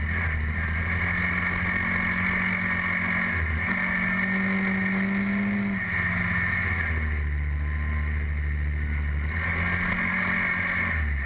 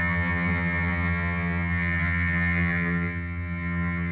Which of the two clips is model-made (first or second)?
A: second